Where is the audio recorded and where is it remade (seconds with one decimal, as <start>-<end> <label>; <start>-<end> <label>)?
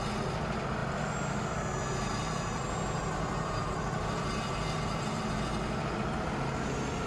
0.0-7.1 recorded